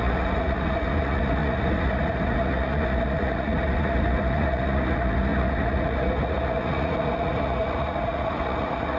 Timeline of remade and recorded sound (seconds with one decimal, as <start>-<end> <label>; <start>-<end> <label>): 0.0-9.0 remade

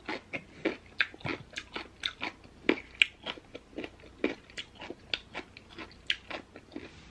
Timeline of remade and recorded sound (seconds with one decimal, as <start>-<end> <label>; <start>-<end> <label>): 0.0-7.1 recorded

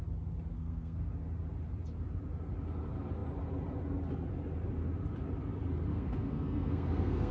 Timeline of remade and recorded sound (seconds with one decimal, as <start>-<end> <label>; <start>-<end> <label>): 0.0-0.5 recorded; 0.5-1.1 remade; 1.1-5.9 recorded; 5.9-7.3 remade

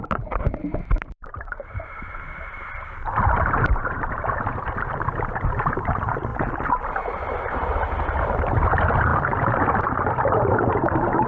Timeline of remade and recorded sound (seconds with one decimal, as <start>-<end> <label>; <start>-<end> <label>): 0.0-6.3 remade; 6.3-8.2 recorded; 8.2-11.3 remade

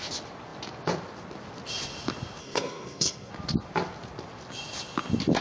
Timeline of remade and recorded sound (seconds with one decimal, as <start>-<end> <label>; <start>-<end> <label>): 0.0-2.4 recorded; 2.4-3.3 remade; 3.3-5.4 recorded

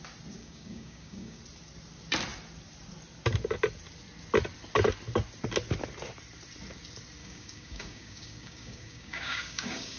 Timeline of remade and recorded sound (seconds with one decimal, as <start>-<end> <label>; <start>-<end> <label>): 0.0-0.4 recorded; 0.4-1.4 remade; 1.4-7.2 recorded; 7.2-10.0 remade

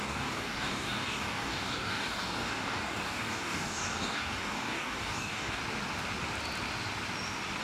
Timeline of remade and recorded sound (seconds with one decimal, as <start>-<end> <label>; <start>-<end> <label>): 0.0-5.6 remade; 5.6-7.6 recorded